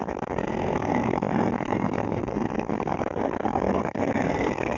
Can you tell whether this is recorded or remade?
remade